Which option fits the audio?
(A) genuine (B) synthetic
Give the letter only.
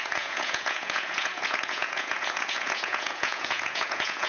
B